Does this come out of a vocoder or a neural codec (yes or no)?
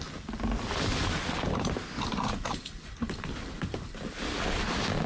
no